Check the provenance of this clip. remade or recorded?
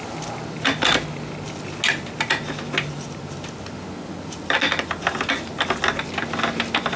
recorded